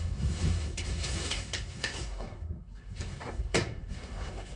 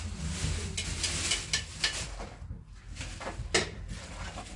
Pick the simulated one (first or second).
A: first